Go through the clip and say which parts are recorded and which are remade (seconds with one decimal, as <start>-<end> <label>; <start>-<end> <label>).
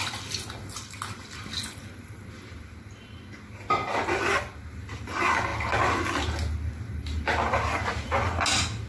0.0-8.9 recorded